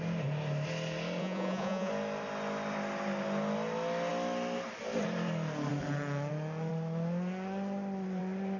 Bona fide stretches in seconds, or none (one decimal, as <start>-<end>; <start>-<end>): 0.0-1.2; 1.9-8.6